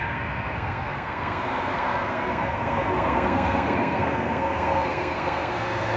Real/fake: fake